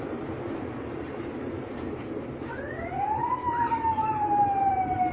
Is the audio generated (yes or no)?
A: yes